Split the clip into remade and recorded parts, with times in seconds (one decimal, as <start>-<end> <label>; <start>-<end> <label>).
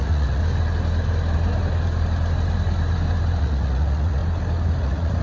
0.0-0.4 remade; 0.4-3.4 recorded; 3.4-4.2 remade; 4.2-4.8 recorded; 4.8-5.2 remade